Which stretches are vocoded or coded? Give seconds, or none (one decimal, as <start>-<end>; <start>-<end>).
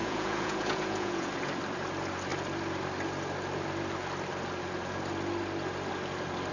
0.0-1.3